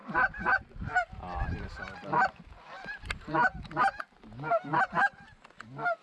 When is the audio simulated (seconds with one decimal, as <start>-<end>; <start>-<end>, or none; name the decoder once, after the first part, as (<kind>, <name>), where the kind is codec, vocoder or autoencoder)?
0.0-3.0 (vocoder, BigVGAN v2); 4.7-5.2